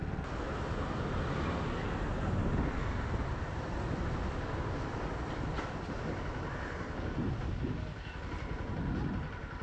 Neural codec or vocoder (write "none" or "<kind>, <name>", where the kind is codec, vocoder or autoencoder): none